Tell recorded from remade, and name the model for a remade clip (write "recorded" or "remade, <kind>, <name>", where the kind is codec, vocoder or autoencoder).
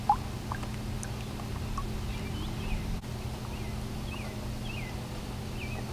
recorded